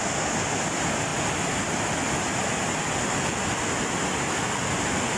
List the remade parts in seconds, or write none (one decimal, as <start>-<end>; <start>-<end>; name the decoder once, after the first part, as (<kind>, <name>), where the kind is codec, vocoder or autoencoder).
none